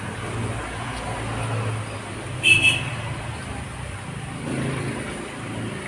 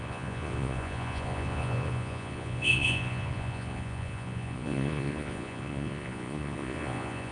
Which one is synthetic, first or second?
second